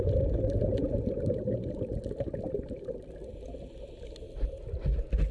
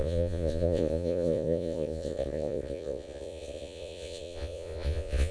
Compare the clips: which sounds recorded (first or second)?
first